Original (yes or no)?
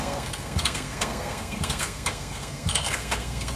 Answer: no